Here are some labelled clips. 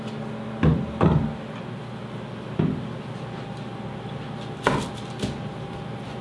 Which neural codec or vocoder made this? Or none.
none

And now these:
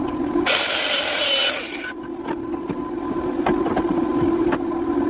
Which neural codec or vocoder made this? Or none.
none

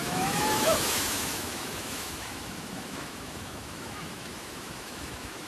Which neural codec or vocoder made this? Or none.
autoencoder, DAC-VAE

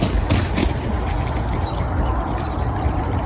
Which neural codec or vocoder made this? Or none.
none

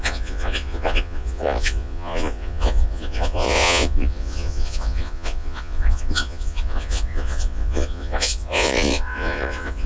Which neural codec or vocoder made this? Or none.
vocoder, Vocos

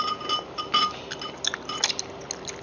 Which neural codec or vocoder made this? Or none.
none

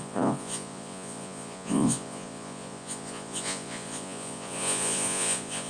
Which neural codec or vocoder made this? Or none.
vocoder, Vocos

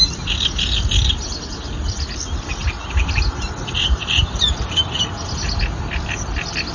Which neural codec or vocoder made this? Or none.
none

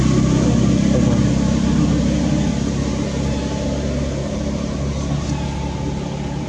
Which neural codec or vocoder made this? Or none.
none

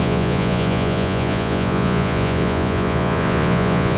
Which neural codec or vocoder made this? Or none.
vocoder, Vocos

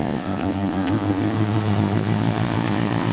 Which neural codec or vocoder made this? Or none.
vocoder, Vocos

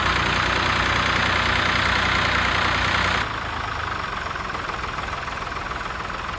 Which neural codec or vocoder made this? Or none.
none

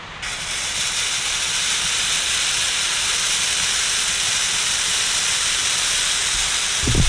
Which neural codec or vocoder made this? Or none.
none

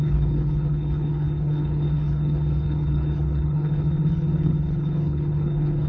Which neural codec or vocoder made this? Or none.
codec, HILCodec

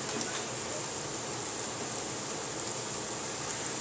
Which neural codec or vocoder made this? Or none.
none